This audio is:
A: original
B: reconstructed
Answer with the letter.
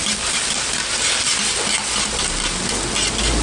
A